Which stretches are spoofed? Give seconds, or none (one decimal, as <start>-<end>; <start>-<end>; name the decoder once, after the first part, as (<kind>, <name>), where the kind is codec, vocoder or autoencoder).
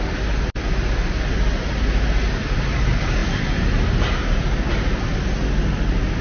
none